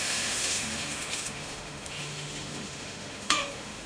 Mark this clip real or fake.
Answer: fake